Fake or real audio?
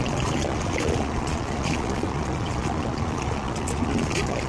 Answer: fake